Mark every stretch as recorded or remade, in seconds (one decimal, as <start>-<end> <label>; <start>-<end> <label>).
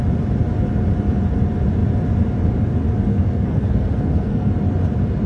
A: 0.0-3.1 recorded; 3.1-4.5 remade; 4.5-5.3 recorded